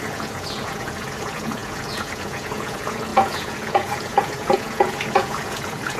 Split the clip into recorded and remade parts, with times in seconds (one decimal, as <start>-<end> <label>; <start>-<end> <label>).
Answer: 0.0-6.0 remade